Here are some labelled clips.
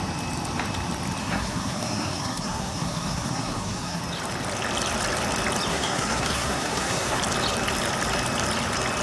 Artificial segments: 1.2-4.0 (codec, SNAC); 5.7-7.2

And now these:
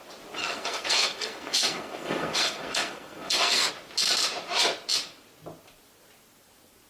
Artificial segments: 0.4-3.7 (codec, SNAC)